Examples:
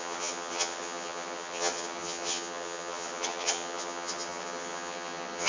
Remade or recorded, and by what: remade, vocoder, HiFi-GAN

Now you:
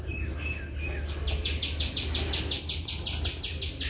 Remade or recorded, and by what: recorded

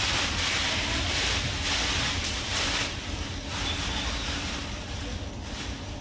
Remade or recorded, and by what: remade, vocoder, BigVGAN v2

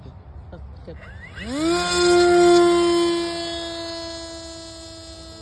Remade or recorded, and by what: recorded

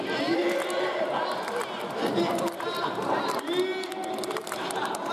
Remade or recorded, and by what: recorded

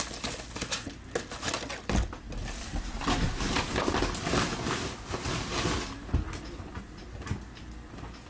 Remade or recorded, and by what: recorded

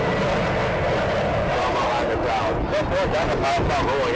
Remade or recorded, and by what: recorded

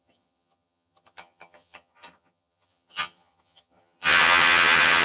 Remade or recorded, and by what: remade, vocoder, HiFi-GAN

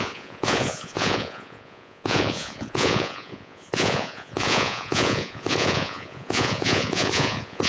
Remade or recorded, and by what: remade, vocoder, Vocos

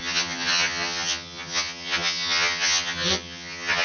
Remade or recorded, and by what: remade, vocoder, HiFi-GAN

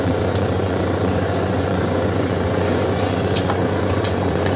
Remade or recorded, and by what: remade, vocoder, Vocos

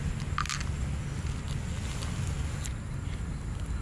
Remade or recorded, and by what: recorded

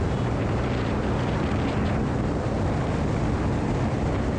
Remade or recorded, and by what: remade, vocoder, BigVGAN v2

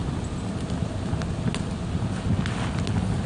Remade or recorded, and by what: recorded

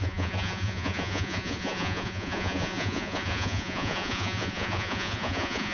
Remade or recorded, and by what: remade, vocoder, Vocos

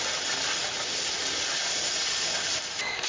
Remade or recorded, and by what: recorded